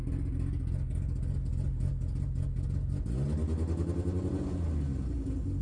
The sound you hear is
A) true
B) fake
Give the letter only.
A